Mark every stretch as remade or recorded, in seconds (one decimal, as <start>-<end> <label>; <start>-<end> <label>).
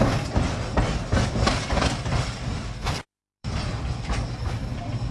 0.0-3.2 recorded; 3.2-4.5 remade; 4.5-5.1 recorded